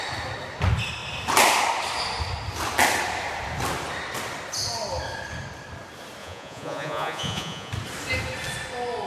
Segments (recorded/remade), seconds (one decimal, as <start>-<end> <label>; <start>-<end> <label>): 0.0-6.2 recorded; 6.2-7.7 remade; 7.7-9.1 recorded

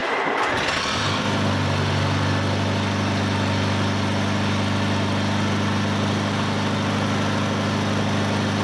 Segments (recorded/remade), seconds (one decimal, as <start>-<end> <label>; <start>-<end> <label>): 0.0-8.6 recorded

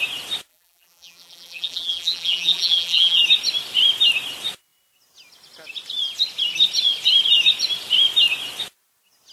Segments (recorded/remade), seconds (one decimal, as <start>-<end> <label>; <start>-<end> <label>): 0.0-0.5 recorded; 0.5-3.2 remade; 3.2-9.3 recorded

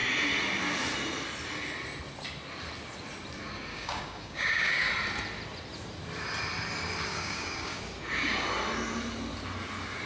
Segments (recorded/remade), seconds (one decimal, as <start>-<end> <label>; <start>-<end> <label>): 0.0-3.7 recorded; 3.7-4.9 remade; 4.9-7.1 recorded; 7.1-7.8 remade; 7.8-10.1 recorded